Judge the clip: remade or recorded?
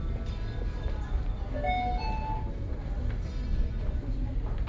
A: recorded